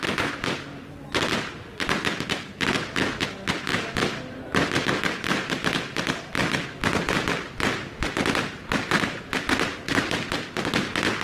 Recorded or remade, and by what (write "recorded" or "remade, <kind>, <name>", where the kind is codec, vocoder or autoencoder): recorded